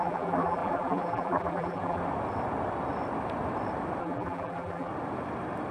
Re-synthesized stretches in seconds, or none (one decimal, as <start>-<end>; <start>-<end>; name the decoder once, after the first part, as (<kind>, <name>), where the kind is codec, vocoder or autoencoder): 0.0-2.0 (vocoder, BigVGAN v2); 4.0-4.9